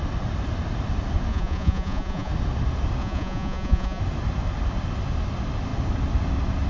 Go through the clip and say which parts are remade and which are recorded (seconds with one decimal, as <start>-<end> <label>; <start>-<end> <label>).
0.0-1.3 recorded; 1.3-2.3 remade; 2.3-3.0 recorded; 3.0-4.0 remade; 4.0-6.7 recorded